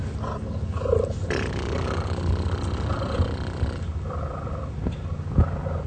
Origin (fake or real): real